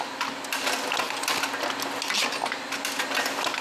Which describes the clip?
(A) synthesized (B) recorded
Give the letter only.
B